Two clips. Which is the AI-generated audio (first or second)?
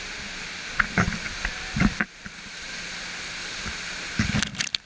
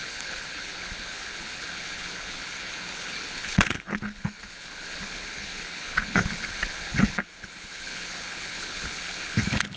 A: second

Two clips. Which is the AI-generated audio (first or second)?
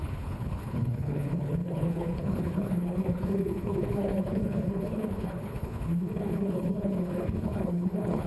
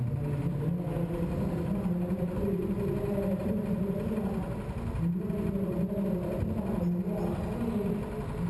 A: first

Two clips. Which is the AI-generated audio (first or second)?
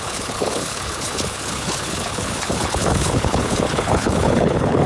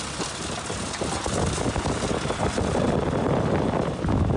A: first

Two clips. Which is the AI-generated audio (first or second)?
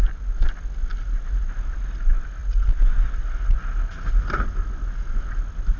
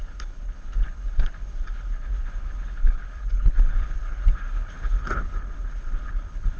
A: second